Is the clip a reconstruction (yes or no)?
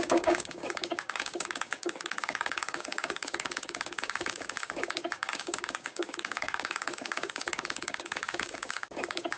yes